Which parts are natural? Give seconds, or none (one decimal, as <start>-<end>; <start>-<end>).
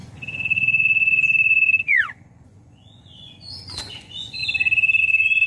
4.4-5.0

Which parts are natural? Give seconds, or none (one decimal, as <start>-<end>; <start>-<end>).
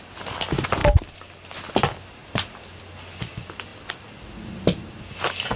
0.0-2.2; 2.8-5.6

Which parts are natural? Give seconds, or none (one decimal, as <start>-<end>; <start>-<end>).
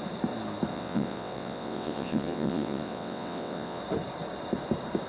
0.0-0.7; 3.8-5.1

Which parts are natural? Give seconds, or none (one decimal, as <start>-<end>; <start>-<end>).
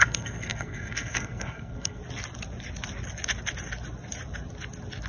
2.0-5.1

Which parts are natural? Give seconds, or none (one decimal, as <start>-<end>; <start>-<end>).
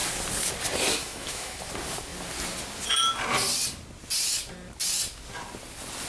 0.0-1.0; 1.6-6.1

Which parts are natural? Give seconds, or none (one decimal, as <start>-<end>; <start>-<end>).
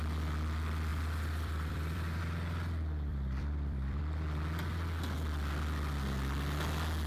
0.0-0.9; 2.2-3.1; 4.0-7.1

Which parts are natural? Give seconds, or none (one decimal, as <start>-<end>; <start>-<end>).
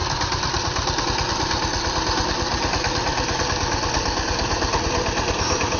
0.0-5.8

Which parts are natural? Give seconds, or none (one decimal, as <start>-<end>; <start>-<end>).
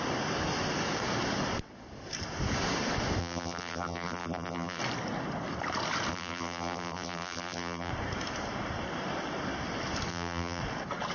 0.0-3.2; 4.8-6.1; 7.9-10.1; 10.6-11.1